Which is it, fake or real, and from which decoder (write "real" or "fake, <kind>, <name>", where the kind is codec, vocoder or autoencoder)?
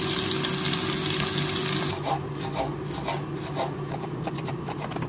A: real